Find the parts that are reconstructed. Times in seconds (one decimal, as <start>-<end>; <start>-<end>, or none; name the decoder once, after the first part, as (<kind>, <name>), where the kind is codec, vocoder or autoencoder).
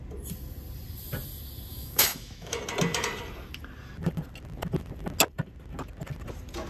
1.7-2.6 (autoencoder, DAC-VAE)